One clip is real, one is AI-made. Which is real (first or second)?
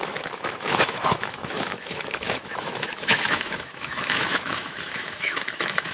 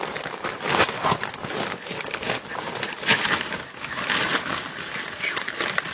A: second